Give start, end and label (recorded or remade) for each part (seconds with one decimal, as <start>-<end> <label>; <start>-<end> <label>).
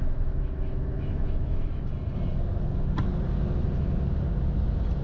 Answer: 0.0-1.9 remade; 1.9-5.0 recorded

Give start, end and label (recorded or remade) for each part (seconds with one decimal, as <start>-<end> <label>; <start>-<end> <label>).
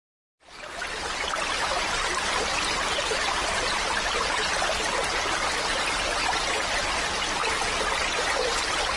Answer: 0.0-9.0 recorded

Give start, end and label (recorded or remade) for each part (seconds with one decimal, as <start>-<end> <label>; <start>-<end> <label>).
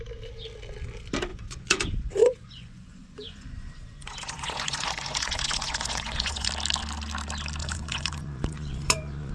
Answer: 0.0-1.3 recorded; 1.3-6.5 remade; 6.5-7.6 recorded; 7.6-9.3 remade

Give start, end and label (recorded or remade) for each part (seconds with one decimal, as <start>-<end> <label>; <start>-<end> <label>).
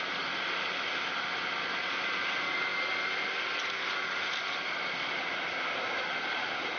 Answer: 0.0-6.8 recorded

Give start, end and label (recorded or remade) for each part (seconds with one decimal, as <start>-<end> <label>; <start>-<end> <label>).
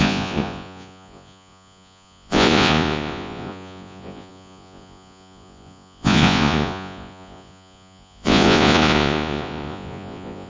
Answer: 0.0-10.5 remade